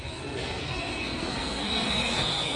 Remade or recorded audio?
remade